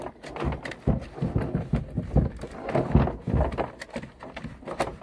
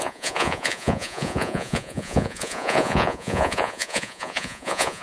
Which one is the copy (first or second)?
second